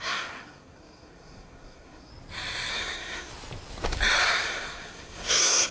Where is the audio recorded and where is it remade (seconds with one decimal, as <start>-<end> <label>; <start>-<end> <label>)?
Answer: 0.0-2.1 remade; 2.1-2.7 recorded; 2.7-3.3 remade; 3.3-4.2 recorded; 4.2-5.7 remade